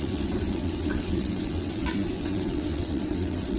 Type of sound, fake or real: fake